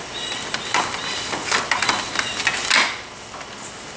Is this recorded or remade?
recorded